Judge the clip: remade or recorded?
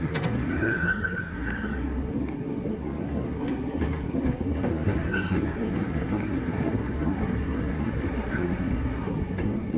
remade